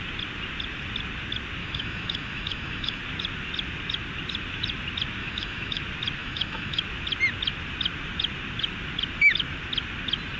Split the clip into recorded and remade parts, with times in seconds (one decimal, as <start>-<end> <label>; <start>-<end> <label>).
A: 0.0-1.6 recorded; 1.6-3.0 remade; 3.0-5.2 recorded; 5.2-5.8 remade; 5.8-6.2 recorded; 6.2-6.8 remade; 6.8-10.4 recorded